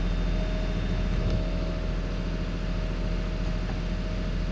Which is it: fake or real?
real